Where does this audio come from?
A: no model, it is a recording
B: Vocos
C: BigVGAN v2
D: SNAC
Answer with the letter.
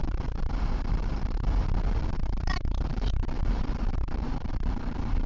C